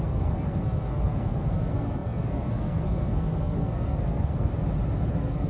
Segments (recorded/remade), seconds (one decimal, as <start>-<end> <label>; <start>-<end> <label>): 0.0-4.5 remade; 4.5-5.1 recorded; 5.1-5.5 remade